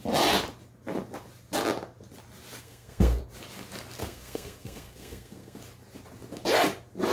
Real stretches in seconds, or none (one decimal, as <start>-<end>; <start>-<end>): 0.0-2.5; 3.2-4.0; 5.6-7.1